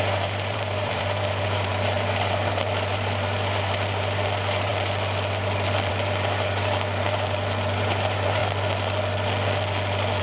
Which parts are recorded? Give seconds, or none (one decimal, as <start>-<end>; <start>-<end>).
4.7-5.9; 8.4-10.2